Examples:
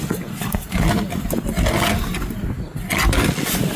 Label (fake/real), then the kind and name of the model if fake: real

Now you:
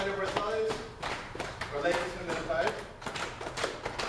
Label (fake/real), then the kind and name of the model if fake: fake, vocoder, BigVGAN v2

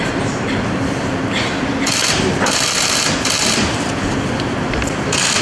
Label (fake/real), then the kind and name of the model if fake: fake, vocoder, BigVGAN v2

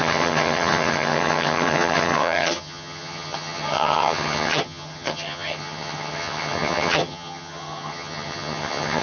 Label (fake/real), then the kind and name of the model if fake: fake, vocoder, HiFi-GAN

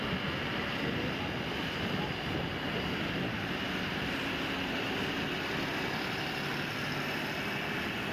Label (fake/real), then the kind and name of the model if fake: real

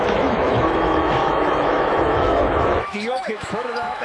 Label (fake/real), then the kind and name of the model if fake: fake, autoencoder, DAC-VAE